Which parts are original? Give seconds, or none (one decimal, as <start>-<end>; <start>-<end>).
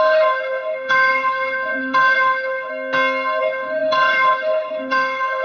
2.7-3.4